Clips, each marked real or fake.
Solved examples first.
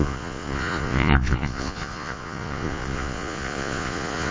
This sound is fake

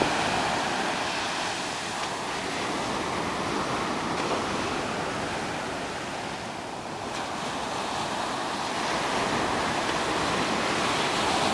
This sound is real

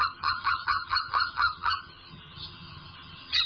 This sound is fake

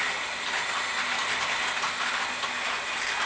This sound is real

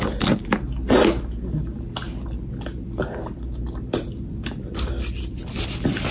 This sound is real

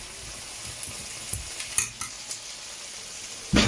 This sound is real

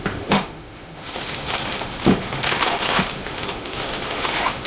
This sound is fake